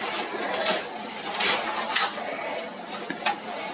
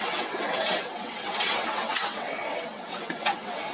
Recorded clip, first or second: first